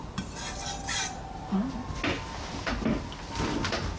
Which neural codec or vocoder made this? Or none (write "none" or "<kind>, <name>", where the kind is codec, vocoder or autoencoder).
none